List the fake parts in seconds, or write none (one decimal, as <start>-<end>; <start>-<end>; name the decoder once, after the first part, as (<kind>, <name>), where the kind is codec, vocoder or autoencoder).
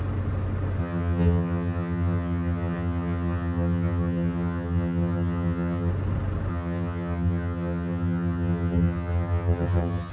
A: 0.8-5.9 (vocoder, HiFi-GAN); 6.5-10.1